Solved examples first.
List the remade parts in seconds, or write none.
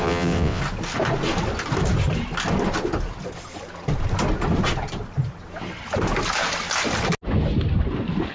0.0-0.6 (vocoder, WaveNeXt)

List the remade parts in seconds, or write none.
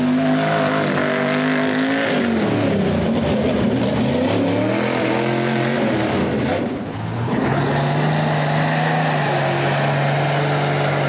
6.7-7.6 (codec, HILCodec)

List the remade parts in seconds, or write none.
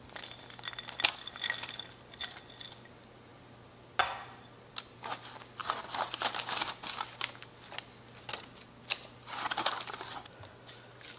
none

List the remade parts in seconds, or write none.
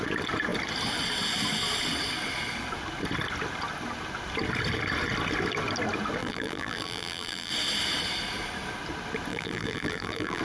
6.2-7.5 (vocoder, BigVGAN v2); 9.3-10.4